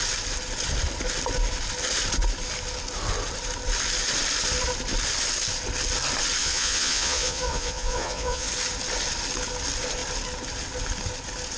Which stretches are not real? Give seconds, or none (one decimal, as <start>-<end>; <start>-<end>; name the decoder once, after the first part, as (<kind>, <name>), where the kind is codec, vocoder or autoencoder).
6.4-8.5 (vocoder, Vocos)

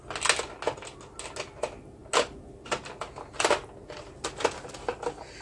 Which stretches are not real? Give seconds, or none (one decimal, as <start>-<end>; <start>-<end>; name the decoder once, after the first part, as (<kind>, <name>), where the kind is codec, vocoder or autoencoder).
none

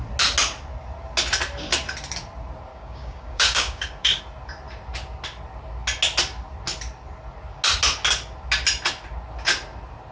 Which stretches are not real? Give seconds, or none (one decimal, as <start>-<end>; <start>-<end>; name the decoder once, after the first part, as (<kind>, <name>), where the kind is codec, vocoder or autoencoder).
2.7-4.2 (codec, DAC)

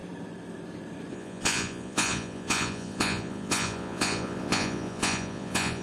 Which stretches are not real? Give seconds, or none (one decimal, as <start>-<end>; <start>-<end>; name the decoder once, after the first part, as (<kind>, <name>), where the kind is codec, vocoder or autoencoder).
1.1-5.8 (vocoder, Vocos)